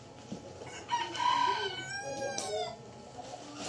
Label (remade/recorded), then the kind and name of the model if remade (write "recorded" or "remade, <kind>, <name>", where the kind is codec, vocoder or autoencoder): recorded